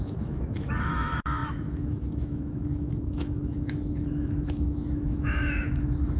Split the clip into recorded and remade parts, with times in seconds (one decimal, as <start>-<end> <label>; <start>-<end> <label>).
0.0-6.2 remade